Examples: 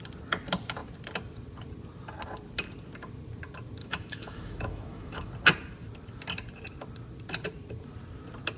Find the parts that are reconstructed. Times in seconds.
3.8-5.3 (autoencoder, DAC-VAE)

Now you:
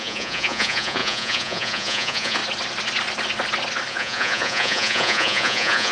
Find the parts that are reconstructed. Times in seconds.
0.0-2.4 (vocoder, Vocos); 3.9-5.9